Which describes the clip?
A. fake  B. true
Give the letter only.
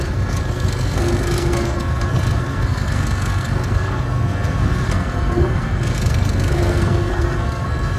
A